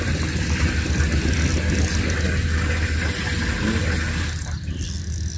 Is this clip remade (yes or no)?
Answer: no